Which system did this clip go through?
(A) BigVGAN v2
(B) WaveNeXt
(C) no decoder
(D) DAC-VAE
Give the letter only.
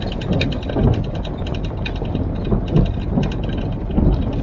C